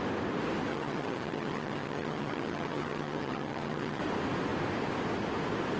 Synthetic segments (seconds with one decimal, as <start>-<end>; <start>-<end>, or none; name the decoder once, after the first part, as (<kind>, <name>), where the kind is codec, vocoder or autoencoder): 0.7-4.0 (vocoder, HiFi-GAN)